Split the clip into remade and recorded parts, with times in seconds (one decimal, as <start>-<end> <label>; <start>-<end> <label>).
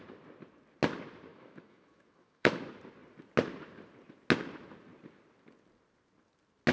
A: 0.0-1.3 recorded; 1.3-2.6 remade; 2.6-6.7 recorded